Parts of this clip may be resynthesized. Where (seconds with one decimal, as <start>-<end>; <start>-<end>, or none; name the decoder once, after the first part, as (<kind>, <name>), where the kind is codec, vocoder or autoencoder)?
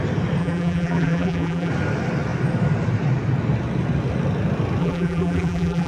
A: 0.4-1.7 (vocoder, BigVGAN v2); 4.8-5.9